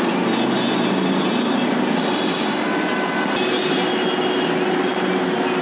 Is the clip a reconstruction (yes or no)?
no